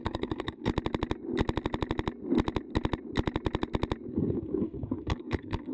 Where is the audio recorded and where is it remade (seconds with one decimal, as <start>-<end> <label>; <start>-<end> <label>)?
0.0-0.7 remade; 0.7-4.1 recorded; 4.1-5.7 remade